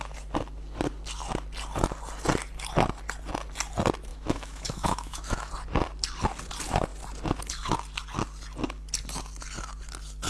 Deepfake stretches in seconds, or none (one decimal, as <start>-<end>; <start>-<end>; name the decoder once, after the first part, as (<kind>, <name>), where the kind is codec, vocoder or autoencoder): 4.1-5.5 (autoencoder, DAC-VAE)